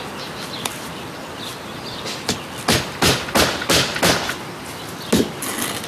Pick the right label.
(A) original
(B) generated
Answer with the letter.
A